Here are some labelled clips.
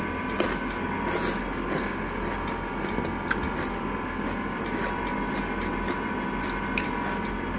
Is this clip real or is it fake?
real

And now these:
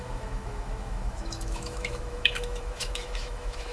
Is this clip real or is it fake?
fake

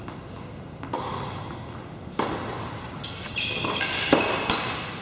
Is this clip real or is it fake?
real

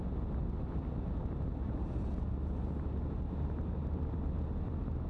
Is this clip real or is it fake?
real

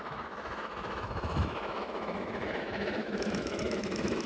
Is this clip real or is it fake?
fake